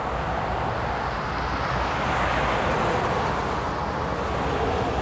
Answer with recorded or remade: recorded